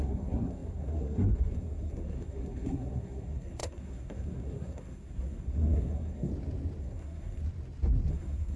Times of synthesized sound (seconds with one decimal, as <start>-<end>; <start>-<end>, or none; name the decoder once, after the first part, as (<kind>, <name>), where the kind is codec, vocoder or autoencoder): 0.0-6.3 (codec, SNAC); 6.8-7.4; 8.1-8.6